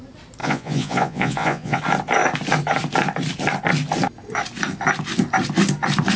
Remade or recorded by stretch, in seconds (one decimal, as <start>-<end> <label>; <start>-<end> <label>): 0.0-0.4 recorded; 0.4-1.8 remade; 1.8-6.2 recorded